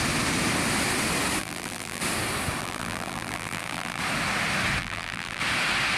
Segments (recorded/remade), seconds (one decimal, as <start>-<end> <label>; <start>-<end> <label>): 0.0-1.4 recorded; 1.4-2.0 remade; 2.0-2.6 recorded; 2.6-4.0 remade; 4.0-4.8 recorded; 4.8-5.4 remade; 5.4-6.0 recorded